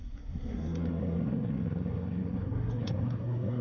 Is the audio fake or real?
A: fake